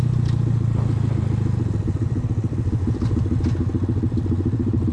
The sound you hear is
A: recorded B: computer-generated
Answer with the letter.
A